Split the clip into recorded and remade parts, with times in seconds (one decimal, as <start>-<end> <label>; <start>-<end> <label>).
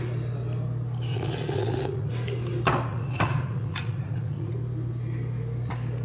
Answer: 0.0-1.1 recorded; 1.1-2.1 remade; 2.1-2.9 recorded; 2.9-4.5 remade; 4.5-6.0 recorded